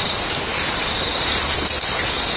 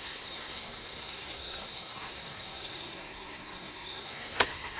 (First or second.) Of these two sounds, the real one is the first